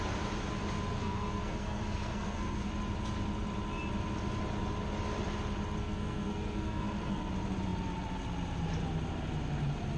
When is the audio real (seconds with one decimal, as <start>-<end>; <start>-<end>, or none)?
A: 0.0-0.9; 2.7-5.8; 7.3-10.0